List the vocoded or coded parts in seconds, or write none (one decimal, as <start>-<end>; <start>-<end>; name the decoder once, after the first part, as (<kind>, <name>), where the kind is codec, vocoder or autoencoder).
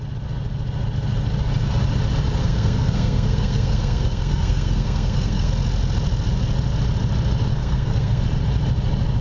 2.4-5.5 (codec, SNAC); 7.5-8.2